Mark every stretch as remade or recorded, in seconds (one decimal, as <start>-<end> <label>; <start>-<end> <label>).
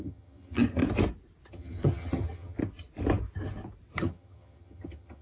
0.0-0.8 remade; 0.8-1.5 recorded; 1.5-2.6 remade; 2.6-4.0 recorded; 4.0-5.2 remade